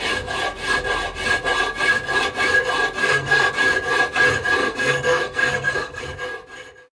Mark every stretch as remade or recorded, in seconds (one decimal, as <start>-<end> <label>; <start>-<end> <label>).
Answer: 0.0-3.0 recorded; 3.0-3.5 remade; 3.5-4.6 recorded; 4.6-6.0 remade; 6.0-6.9 recorded